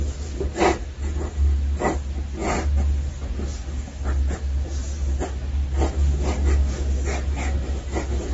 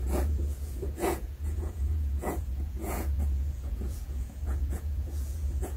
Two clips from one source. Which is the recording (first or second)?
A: first